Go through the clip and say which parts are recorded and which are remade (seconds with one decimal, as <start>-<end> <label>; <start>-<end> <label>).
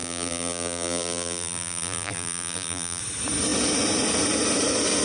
0.0-3.0 remade; 3.0-5.0 recorded